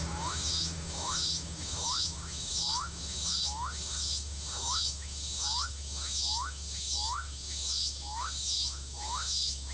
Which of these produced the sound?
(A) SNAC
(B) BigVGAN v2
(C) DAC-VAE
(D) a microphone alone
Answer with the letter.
C